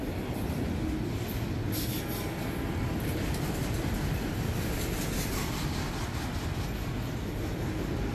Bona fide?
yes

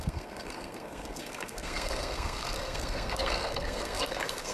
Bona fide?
no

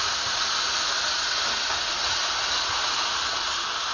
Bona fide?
yes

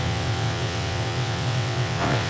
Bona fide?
no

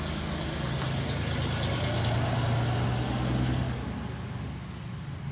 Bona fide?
yes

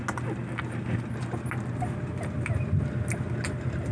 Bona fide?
yes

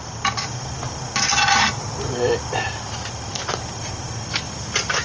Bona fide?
yes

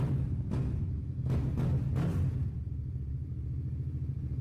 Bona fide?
yes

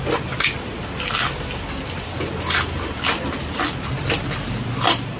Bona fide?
yes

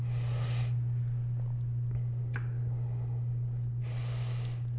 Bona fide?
yes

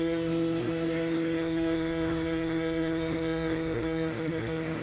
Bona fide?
no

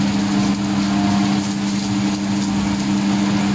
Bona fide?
yes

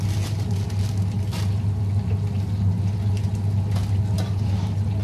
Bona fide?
yes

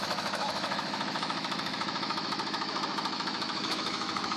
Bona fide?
no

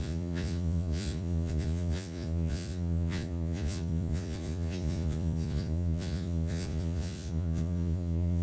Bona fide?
no